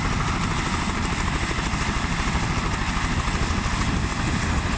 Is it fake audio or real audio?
real